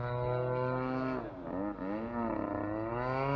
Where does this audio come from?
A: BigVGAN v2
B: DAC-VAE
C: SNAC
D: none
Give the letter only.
D